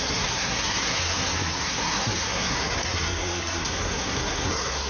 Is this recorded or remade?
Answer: remade